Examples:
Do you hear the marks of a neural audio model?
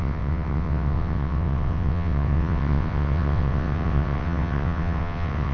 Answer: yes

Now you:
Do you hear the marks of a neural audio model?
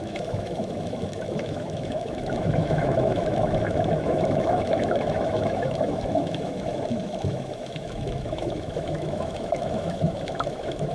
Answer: yes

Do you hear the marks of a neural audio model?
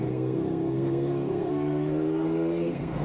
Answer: yes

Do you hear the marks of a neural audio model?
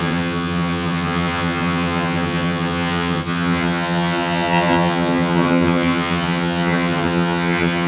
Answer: yes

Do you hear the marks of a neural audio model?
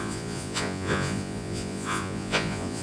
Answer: yes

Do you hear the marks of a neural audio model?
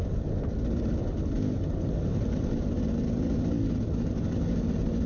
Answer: no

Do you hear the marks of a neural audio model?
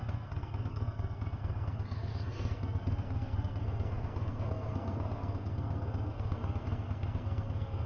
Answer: yes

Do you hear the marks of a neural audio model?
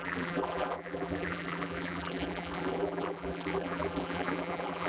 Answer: yes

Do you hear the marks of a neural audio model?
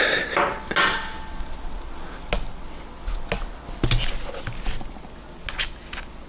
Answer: no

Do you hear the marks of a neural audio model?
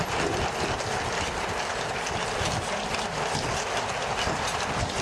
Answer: no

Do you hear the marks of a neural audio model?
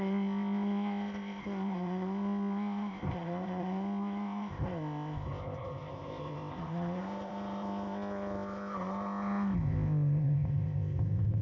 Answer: yes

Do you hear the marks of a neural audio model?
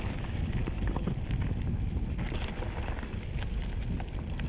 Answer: no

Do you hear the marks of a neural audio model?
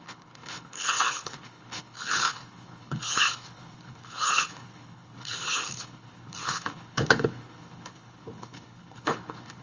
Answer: yes